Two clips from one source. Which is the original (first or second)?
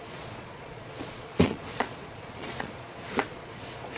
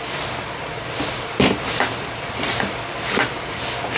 second